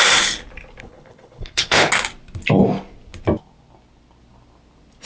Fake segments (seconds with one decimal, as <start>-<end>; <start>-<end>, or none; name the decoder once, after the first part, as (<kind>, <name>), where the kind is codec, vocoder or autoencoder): 0.8-1.9 (codec, HILCodec)